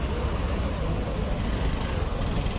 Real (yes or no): yes